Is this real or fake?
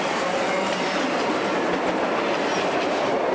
real